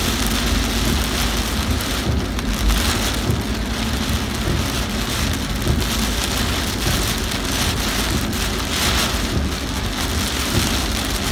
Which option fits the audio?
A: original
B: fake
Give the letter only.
A